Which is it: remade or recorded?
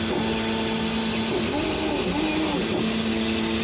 recorded